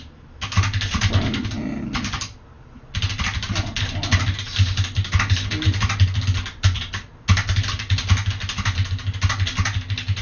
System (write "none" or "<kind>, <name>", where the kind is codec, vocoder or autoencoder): none